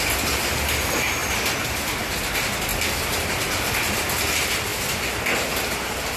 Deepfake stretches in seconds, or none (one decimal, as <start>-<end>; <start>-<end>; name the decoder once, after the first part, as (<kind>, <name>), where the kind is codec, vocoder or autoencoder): none